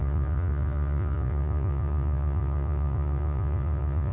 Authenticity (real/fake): fake